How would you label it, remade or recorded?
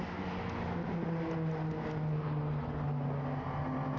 recorded